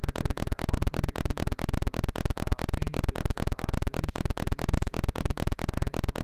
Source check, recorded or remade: remade